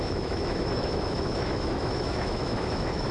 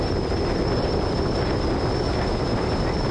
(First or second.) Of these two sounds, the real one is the second